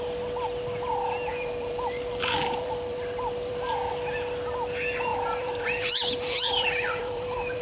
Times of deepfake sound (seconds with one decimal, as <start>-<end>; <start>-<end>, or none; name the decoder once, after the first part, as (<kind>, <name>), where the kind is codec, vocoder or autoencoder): 1.3-3.9 (vocoder, BigVGAN v2); 5.1-7.6